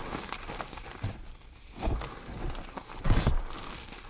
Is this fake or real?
real